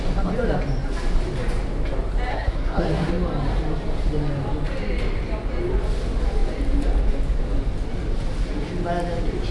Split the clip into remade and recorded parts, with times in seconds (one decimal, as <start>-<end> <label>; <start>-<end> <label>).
0.0-2.3 recorded; 2.3-3.1 remade; 3.1-9.5 recorded